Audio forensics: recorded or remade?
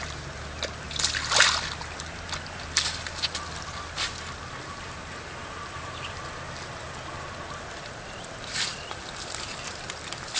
recorded